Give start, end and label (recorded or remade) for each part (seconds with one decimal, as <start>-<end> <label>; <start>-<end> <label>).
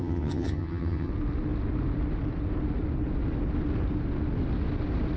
0.0-1.1 remade; 1.1-5.2 recorded